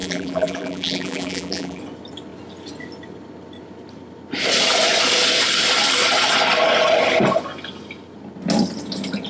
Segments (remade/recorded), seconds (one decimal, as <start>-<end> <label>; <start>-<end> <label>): 0.0-1.8 remade; 1.8-9.3 recorded